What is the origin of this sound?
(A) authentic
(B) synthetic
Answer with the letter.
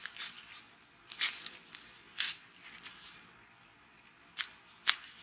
A